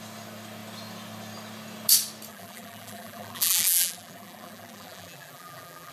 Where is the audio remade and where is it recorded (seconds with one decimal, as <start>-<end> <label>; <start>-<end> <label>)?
0.0-2.3 recorded; 2.3-5.9 remade